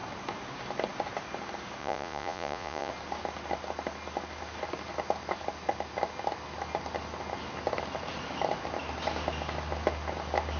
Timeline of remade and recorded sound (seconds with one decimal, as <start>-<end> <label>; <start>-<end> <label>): 0.0-1.8 recorded; 1.8-2.9 remade; 2.9-10.6 recorded